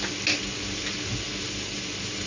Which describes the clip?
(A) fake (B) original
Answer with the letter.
B